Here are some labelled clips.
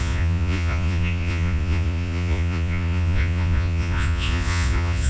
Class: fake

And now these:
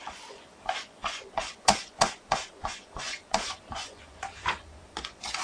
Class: fake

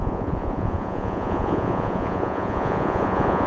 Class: fake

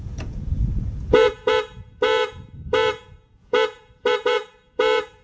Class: fake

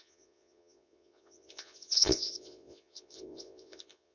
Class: fake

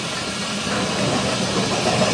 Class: real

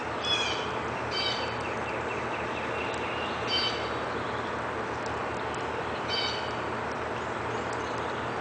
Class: real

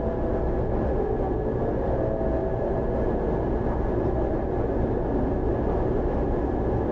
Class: real